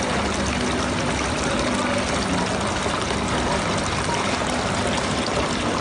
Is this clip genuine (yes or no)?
yes